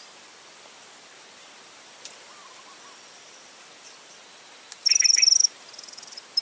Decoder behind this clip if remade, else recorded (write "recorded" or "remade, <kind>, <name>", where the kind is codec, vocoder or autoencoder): remade, vocoder, BigVGAN v2